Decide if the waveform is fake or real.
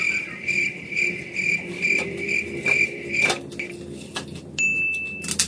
real